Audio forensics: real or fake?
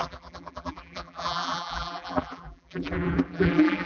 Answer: fake